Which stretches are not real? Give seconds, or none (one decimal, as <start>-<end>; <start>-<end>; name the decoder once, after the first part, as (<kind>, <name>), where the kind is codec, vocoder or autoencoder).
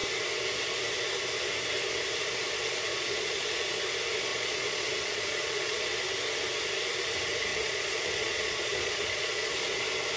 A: 2.9-3.8 (vocoder, Vocos); 4.3-5.8; 7.5-9.5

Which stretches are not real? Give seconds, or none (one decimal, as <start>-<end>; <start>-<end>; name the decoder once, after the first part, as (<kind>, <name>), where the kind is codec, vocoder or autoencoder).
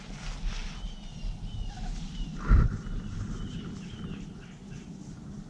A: none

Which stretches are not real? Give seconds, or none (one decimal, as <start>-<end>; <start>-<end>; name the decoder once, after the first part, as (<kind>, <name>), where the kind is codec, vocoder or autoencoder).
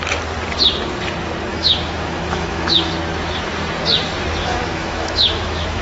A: 1.5-2.9 (autoencoder, DAC-VAE); 4.4-5.8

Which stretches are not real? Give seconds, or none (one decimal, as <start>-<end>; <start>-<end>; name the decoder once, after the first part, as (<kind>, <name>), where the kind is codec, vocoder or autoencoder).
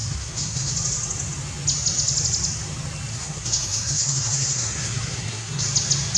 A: 0.0-0.7 (codec, SNAC); 3.1-5.6